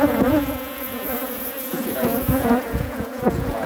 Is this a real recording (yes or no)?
no